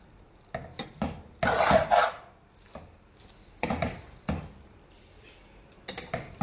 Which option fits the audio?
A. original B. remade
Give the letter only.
A